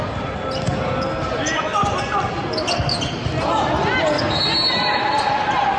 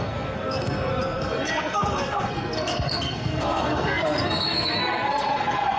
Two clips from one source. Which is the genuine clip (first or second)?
first